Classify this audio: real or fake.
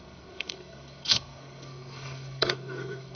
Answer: fake